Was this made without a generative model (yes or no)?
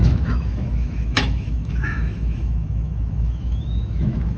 no